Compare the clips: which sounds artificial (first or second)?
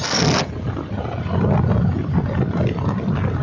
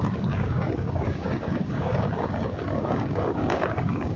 second